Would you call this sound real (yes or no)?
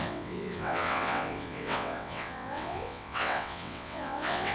no